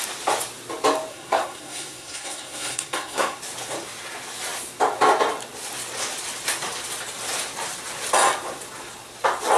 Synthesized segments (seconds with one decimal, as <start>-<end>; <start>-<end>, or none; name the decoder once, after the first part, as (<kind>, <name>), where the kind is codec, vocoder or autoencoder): 1.1-3.4 (codec, SNAC)